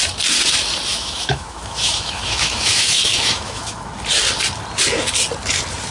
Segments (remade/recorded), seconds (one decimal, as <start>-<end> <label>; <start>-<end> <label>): 0.0-0.9 recorded; 0.9-3.9 remade; 3.9-5.9 recorded